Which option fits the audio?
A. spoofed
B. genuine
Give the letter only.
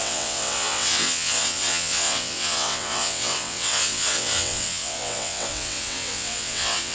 A